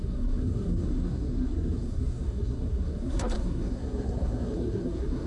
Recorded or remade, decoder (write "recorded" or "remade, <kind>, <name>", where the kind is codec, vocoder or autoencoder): remade, codec, SNAC